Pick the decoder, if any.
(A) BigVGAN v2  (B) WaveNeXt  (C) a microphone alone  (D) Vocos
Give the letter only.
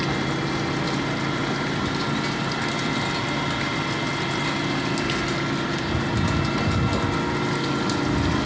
C